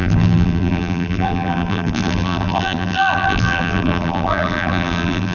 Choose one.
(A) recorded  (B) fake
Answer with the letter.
B